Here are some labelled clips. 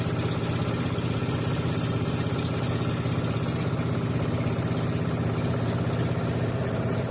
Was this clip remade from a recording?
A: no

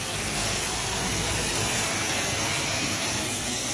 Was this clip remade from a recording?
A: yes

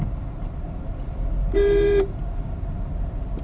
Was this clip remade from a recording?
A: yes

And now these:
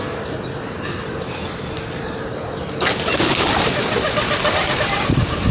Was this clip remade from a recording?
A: no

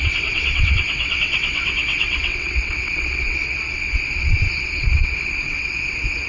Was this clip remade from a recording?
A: yes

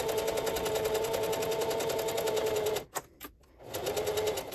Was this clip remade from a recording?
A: no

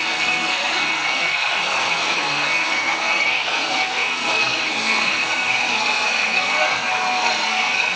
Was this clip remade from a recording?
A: yes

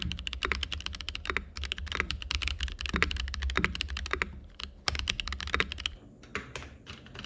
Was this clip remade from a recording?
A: no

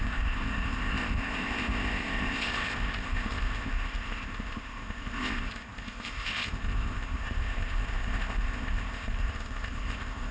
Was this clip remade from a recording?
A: yes